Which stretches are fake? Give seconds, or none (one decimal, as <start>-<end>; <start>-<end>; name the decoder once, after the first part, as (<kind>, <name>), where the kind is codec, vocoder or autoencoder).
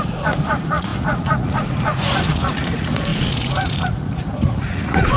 0.0-5.2 (vocoder, Vocos)